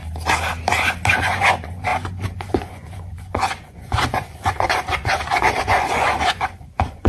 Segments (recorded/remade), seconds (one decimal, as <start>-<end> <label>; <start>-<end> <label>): 0.0-1.1 recorded; 1.1-7.1 remade